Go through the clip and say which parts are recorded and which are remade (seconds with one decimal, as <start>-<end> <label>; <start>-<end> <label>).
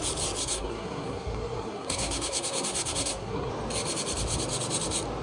0.0-0.4 recorded; 0.4-3.5 remade; 3.5-5.2 recorded